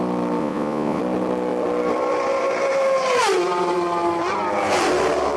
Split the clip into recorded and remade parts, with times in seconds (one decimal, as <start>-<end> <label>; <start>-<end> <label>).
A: 0.0-0.4 recorded; 0.4-1.0 remade; 1.0-5.4 recorded